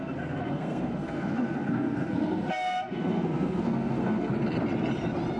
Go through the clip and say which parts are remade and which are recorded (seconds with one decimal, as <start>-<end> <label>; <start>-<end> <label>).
0.0-4.3 remade; 4.3-5.4 recorded